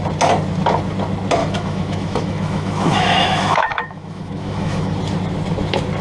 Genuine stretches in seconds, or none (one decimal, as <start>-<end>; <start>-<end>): 0.0-1.4; 5.0-6.0